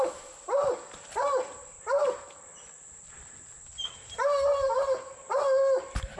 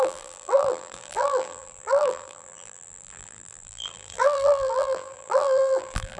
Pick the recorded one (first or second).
first